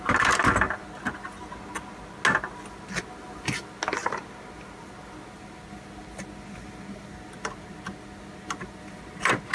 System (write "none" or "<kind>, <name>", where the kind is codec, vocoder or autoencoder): none